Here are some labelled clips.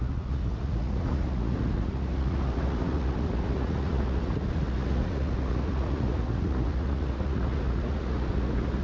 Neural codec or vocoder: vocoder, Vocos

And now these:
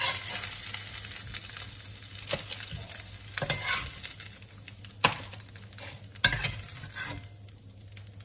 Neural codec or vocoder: none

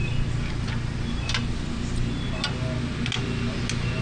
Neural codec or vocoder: none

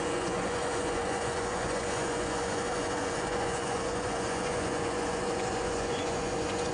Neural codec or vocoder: vocoder, Vocos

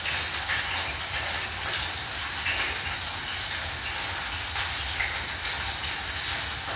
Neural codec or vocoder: none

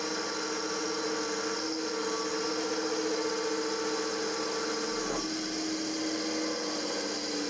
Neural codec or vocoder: none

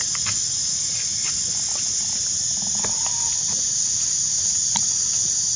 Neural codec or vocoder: none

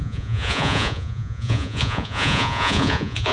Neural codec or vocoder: vocoder, Vocos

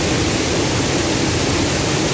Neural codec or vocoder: none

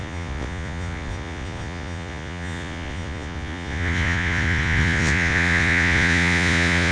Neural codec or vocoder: vocoder, Vocos